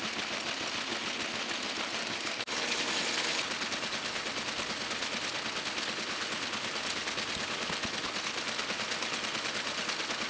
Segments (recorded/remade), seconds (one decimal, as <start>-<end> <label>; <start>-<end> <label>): 0.0-2.0 recorded; 2.0-2.9 remade; 2.9-10.3 recorded